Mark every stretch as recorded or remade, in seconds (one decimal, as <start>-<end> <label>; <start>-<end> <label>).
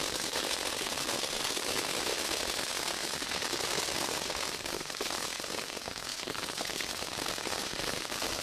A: 0.0-8.4 remade